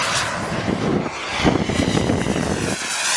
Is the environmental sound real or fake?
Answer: real